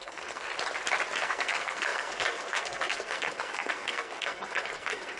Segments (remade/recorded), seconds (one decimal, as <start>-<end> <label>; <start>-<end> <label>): 0.0-0.5 remade; 0.5-1.1 recorded; 1.1-5.2 remade